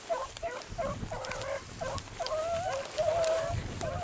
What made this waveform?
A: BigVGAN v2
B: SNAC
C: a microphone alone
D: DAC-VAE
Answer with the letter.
C